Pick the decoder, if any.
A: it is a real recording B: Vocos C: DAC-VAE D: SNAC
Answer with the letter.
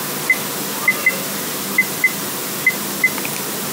A